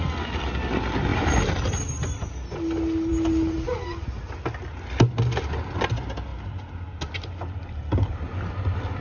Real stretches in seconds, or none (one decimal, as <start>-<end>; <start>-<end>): 0.0-9.0

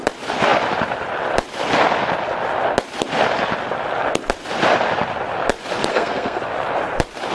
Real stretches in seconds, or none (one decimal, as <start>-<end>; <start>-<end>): 0.0-5.9; 6.4-7.3

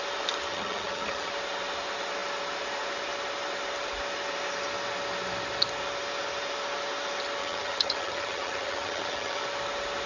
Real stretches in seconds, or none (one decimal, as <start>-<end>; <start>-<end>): 0.0-0.5; 1.3-7.4; 9.4-10.1

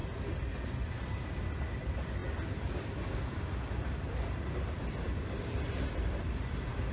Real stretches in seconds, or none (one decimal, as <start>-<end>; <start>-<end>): 0.0-6.9

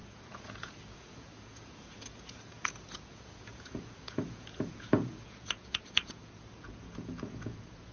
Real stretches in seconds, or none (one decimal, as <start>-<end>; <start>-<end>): none

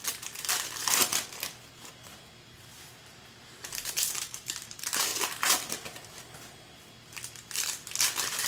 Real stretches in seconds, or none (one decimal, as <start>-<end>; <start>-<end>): 0.0-2.7; 5.1-8.5